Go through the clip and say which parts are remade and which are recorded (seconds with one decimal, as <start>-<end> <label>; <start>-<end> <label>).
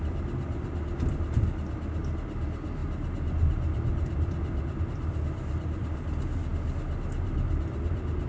0.0-8.3 recorded